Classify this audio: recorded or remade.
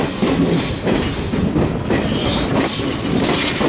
recorded